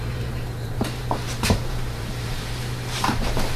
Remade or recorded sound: remade